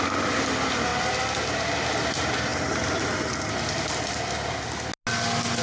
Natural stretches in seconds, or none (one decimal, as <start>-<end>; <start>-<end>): 0.0-5.6